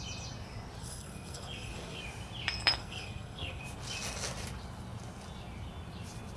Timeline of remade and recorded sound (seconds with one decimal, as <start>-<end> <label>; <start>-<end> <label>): 0.0-0.8 recorded; 0.8-2.0 remade; 2.0-2.8 recorded; 2.8-3.6 remade; 3.6-6.4 recorded